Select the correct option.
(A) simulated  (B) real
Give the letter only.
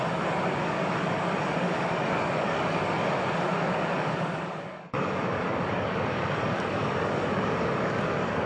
A